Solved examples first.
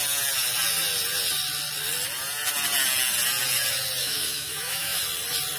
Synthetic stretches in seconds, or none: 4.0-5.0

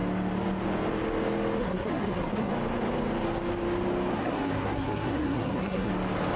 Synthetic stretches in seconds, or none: 1.6-2.5; 4.1-5.9

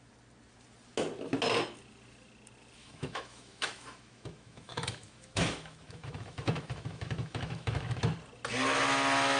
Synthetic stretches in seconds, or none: 2.8-8.0

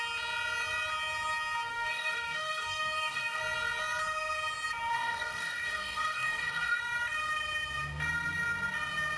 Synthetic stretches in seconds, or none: 1.7-3.4; 4.9-6.8

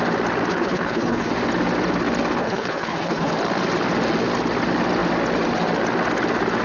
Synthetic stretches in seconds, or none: 0.5-1.3; 2.4-3.3

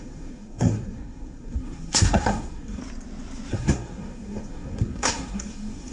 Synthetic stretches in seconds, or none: 0.0-2.8; 3.5-5.9

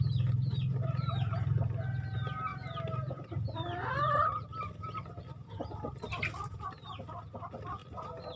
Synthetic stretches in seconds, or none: 2.5-4.1